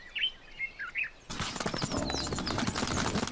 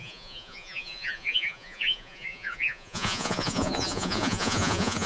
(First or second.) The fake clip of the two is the second